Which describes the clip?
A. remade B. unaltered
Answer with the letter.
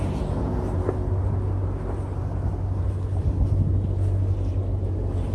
B